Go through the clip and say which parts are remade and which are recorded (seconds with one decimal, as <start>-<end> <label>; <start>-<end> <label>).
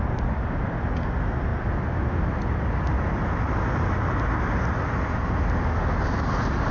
0.0-6.7 recorded